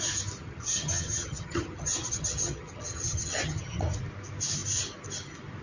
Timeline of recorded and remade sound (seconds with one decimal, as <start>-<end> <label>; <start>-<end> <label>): 0.0-0.4 recorded; 0.4-3.8 remade; 3.8-5.6 recorded